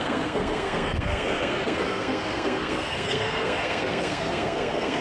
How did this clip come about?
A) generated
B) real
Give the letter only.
A